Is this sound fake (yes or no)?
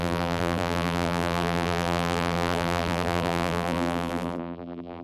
yes